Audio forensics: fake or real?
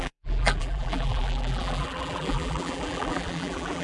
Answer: fake